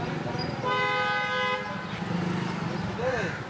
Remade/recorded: recorded